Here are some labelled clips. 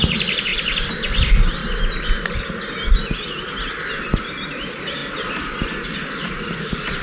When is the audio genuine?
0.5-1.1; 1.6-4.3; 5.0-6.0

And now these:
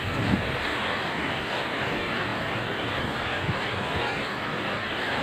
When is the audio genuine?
none

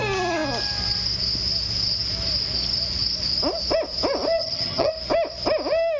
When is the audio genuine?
0.0-4.4; 4.9-6.0